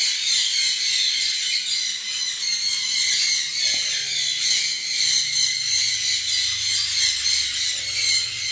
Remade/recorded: recorded